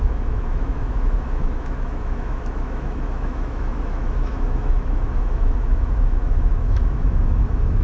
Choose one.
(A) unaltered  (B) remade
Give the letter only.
B